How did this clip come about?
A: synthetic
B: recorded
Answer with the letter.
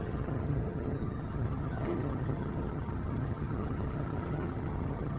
A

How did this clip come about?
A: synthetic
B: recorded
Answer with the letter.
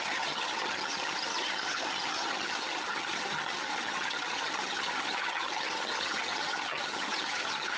A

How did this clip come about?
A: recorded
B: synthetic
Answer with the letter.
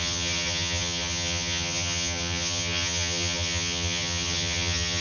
B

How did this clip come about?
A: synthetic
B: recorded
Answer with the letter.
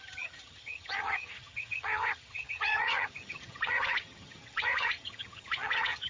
A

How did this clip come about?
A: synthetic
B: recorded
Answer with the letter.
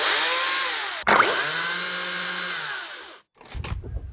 B